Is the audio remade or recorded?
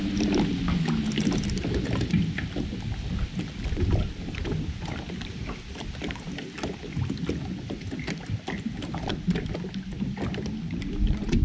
recorded